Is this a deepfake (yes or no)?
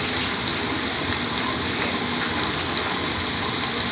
no